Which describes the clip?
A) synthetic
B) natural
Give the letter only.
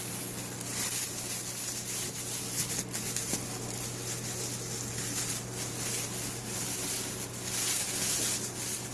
B